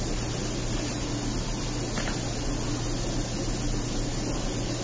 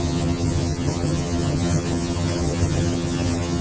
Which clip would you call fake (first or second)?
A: second